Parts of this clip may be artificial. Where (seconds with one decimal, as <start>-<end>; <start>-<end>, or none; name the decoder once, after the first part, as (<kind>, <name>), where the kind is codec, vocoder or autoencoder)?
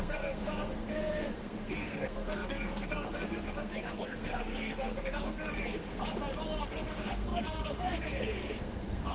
0.0-6.0 (codec, SNAC); 6.6-9.1